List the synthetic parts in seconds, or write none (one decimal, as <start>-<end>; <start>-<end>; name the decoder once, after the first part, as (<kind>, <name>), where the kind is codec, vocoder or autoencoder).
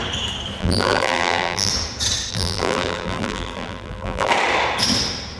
0.6-1.7 (vocoder, BigVGAN v2); 2.3-4.3